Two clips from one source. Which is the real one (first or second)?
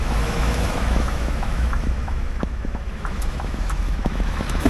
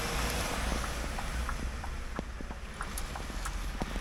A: second